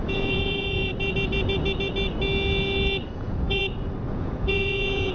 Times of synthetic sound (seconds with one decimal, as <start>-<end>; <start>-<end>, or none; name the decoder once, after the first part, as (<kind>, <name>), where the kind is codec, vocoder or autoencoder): 0.0-0.9 (vocoder, Vocos); 3.1-3.6; 4.1-5.1